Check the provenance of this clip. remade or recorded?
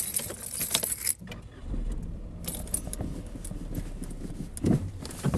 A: recorded